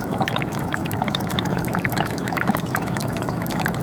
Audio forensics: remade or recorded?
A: remade